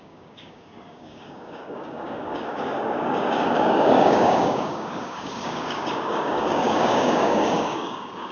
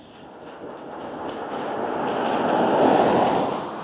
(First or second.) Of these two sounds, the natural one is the second